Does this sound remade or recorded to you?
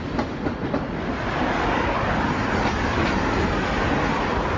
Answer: recorded